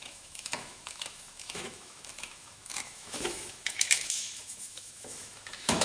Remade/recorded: remade